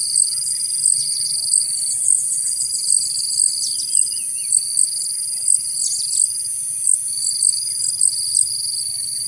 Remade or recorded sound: recorded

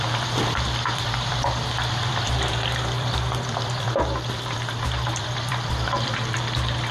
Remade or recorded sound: remade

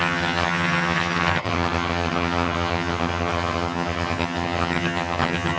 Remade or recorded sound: remade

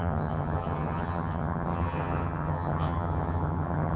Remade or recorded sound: remade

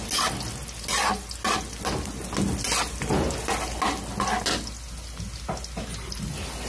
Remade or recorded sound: recorded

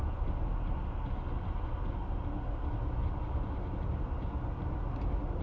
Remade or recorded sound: recorded